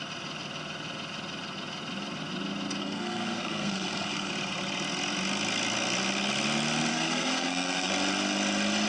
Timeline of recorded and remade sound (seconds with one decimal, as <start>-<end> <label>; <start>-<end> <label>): 0.0-2.8 recorded; 2.8-4.3 remade; 4.3-6.9 recorded; 6.9-7.9 remade; 7.9-8.9 recorded

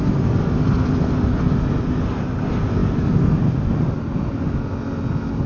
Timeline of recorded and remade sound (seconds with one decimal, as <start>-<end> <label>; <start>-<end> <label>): 0.0-5.5 recorded